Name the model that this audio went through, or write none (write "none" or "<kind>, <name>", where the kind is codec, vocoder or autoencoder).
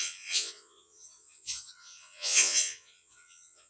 vocoder, Vocos